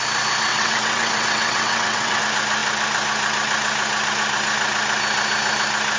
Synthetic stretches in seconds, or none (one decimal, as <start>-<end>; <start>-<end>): 0.5-2.2